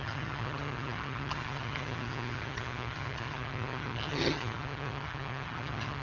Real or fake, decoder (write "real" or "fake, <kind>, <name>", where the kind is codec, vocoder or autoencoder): fake, vocoder, HiFi-GAN